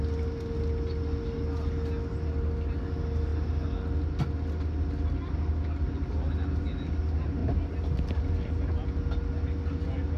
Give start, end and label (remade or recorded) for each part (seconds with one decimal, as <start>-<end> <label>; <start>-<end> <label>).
0.0-10.2 recorded

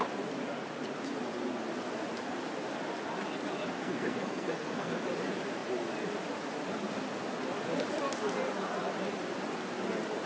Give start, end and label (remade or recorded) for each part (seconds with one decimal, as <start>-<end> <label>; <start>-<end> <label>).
0.0-3.8 recorded; 3.8-5.0 remade; 5.0-10.3 recorded

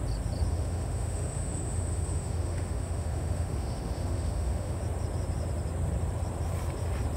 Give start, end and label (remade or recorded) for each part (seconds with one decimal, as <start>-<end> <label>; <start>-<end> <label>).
0.0-0.5 recorded; 0.5-4.8 remade; 4.8-7.2 recorded